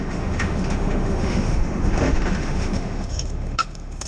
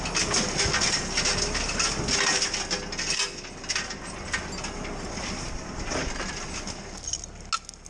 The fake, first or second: first